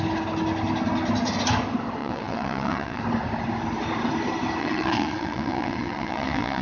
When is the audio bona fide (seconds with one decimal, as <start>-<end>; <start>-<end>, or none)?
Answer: 0.0-2.0; 3.0-4.6